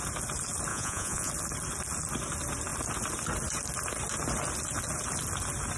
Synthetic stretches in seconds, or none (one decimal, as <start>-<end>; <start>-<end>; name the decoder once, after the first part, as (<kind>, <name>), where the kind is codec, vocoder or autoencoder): 0.7-1.3 (vocoder, Vocos)